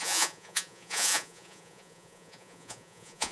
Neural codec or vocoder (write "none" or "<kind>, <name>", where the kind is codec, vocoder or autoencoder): vocoder, Vocos